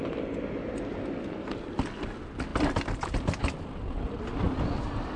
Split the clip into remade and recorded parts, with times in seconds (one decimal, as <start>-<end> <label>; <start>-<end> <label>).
0.0-0.9 recorded; 0.9-1.4 remade; 1.4-5.2 recorded